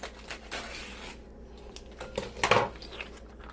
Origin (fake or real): real